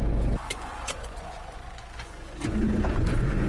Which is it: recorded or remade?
remade